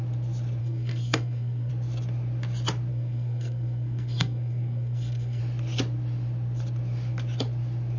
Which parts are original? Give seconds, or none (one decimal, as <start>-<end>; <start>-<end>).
0.0-0.6; 1.7-2.9; 5.4-8.0